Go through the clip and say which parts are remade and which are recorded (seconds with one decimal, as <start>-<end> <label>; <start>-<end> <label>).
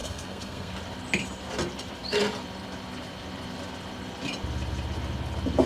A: 0.0-0.7 remade; 0.7-5.7 recorded